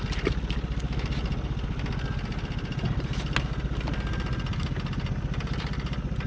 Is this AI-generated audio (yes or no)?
no